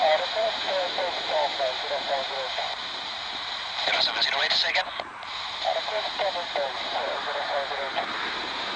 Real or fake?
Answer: fake